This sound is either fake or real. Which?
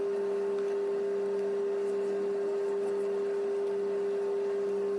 real